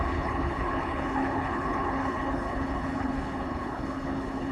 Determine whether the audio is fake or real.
fake